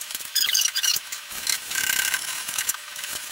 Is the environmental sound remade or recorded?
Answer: remade